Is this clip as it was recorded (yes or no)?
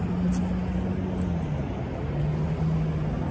yes